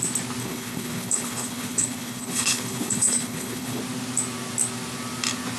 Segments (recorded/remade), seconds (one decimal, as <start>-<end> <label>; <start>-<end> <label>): 0.0-0.4 recorded; 0.4-3.8 remade; 3.8-5.6 recorded